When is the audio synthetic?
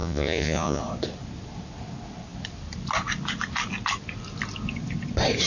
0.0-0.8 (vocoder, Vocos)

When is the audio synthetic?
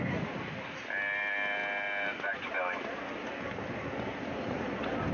none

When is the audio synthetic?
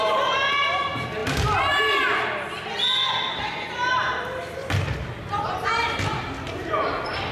none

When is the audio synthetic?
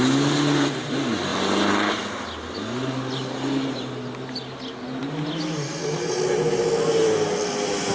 none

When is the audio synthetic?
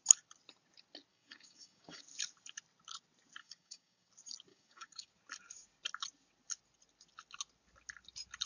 1.1-2.0 (codec, DAC); 3.4-4.1; 4.5-5.1